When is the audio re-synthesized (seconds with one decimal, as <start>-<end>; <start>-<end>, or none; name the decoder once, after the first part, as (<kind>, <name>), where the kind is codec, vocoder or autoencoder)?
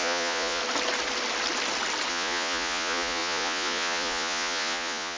0.0-0.6 (vocoder, Vocos); 2.1-5.2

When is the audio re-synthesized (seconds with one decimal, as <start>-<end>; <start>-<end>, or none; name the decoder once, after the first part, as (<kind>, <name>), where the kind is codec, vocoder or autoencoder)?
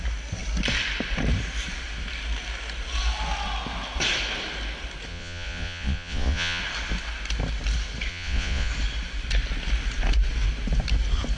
5.1-6.6 (vocoder, Vocos); 8.1-8.7